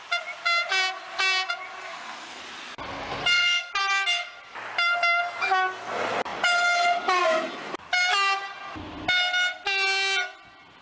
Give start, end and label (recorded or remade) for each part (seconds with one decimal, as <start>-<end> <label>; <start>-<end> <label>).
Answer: 0.0-1.8 recorded; 1.8-2.4 remade; 2.4-3.2 recorded; 3.2-3.7 remade; 3.7-10.8 recorded